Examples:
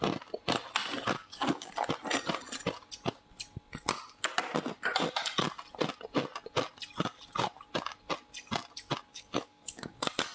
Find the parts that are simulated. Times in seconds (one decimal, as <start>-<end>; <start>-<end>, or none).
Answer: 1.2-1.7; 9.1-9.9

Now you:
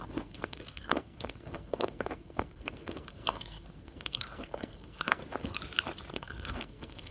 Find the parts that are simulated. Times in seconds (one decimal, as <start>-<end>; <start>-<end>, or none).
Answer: 0.0-5.2; 6.1-7.1

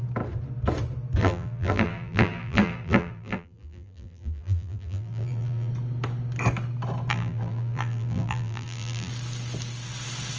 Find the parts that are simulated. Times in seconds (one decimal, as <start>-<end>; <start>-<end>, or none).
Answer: 1.2-5.7; 7.1-9.1

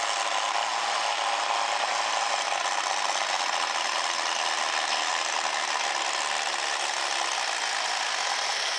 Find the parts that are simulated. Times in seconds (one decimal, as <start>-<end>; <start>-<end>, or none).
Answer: none

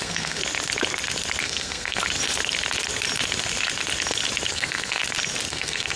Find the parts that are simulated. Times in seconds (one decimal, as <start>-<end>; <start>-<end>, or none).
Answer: 0.0-0.4; 1.4-2.0; 4.5-5.0; 5.5-6.0

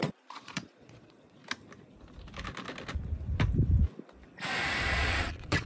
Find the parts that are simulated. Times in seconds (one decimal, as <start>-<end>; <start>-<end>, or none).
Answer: 0.0-1.4; 4.8-5.7

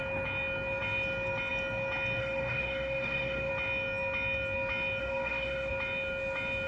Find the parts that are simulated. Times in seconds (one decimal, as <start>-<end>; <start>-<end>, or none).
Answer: 2.2-3.5; 5.0-5.7

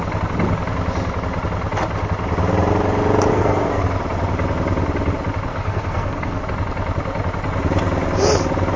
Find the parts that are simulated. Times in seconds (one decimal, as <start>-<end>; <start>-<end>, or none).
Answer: 3.3-3.8; 5.5-6.4